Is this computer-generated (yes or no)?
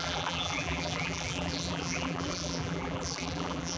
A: yes